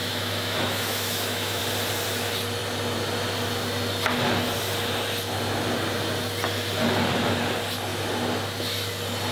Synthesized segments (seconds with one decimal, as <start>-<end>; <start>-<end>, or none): 0.0-1.6